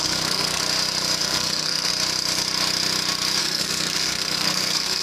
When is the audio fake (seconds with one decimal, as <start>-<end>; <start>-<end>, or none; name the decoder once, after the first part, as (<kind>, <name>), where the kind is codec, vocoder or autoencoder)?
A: 0.0-0.6 (codec, SNAC); 1.2-1.9; 3.4-5.0